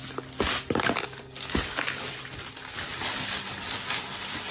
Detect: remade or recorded recorded